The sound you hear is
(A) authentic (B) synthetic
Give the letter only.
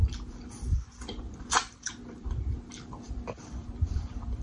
B